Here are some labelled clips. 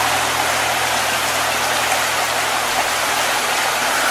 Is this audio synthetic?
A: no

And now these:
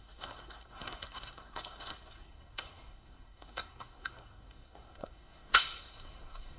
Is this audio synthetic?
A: yes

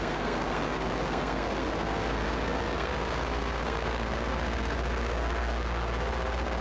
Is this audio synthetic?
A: yes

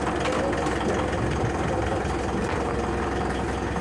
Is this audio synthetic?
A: no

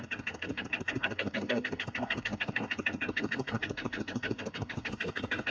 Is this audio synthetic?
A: yes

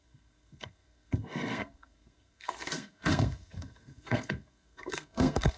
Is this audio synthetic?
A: yes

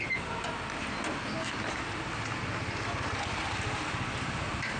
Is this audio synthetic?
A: no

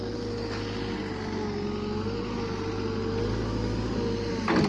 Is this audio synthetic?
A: no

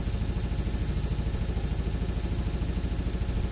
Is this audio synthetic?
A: no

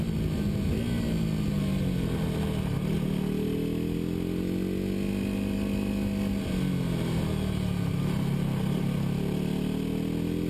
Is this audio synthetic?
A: no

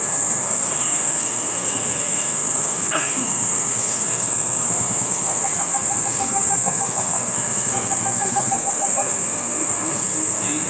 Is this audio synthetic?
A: yes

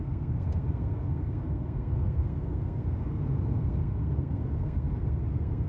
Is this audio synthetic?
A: yes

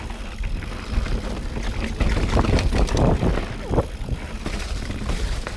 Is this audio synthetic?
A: no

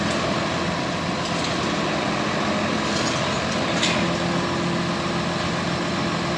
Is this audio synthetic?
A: no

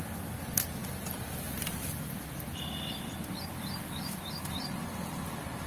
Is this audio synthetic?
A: no